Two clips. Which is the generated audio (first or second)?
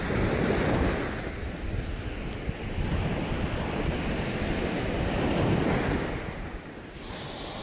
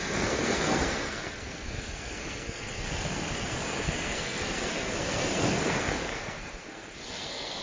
second